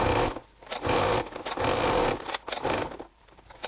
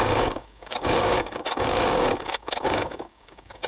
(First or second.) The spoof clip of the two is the second